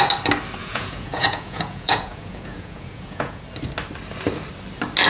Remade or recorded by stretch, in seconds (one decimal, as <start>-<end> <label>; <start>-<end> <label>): 0.0-0.6 recorded; 0.6-3.4 remade; 3.4-5.1 recorded